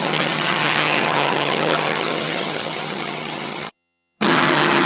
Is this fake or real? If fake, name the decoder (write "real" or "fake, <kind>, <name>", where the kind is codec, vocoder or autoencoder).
fake, vocoder, HiFi-GAN